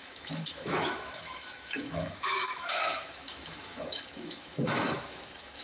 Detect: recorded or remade remade